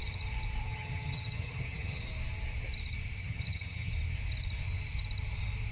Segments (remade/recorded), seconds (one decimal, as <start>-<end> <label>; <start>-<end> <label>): 0.0-0.7 recorded; 0.7-2.0 remade; 2.0-3.2 recorded; 3.2-3.9 remade; 3.9-5.7 recorded